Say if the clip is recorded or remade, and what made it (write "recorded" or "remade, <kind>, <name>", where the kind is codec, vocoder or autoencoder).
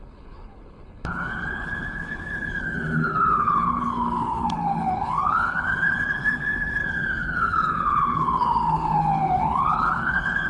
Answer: remade, codec, HILCodec